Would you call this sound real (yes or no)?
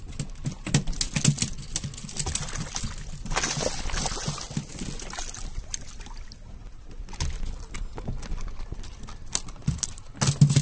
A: yes